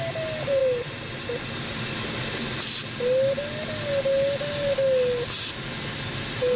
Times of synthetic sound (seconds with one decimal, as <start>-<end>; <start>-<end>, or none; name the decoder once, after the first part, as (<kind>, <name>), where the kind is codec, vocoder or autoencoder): none